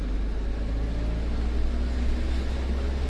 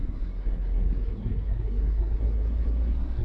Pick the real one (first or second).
first